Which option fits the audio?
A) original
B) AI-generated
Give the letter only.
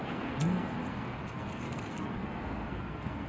B